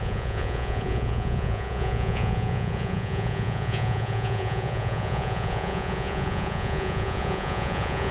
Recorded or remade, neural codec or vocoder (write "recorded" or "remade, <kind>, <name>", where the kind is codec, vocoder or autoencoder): remade, vocoder, Vocos